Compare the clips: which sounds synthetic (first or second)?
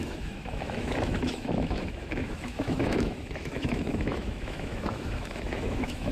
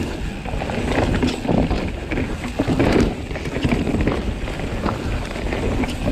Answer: first